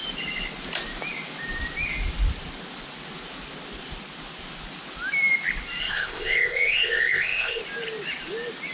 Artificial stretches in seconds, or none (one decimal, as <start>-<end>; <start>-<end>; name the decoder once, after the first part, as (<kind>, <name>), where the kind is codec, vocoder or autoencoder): 5.8-7.6 (codec, ZipCodec)